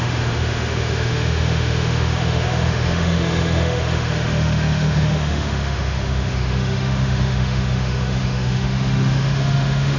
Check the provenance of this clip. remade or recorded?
remade